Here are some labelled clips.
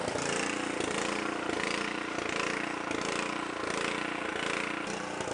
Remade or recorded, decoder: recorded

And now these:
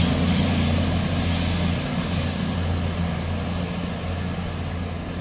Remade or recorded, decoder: recorded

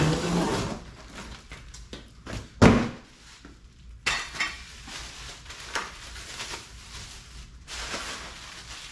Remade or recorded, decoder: recorded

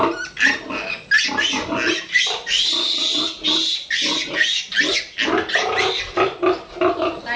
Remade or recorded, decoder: recorded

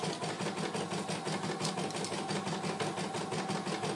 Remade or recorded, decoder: recorded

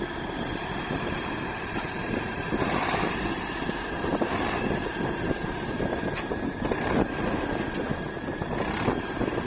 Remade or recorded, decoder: recorded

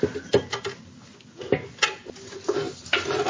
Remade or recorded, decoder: recorded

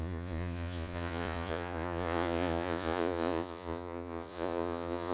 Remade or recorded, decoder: remade, vocoder, Vocos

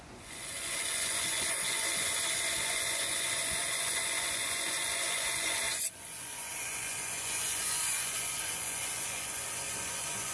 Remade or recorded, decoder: remade, vocoder, Vocos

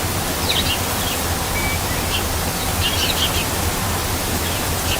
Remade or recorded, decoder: recorded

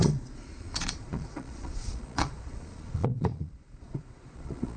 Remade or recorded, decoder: remade, vocoder, Vocos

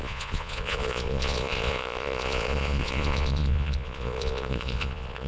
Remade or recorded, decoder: remade, vocoder, Vocos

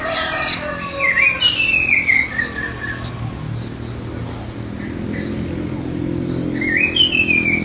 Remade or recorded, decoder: recorded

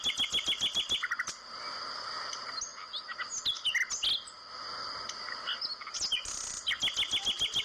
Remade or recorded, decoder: recorded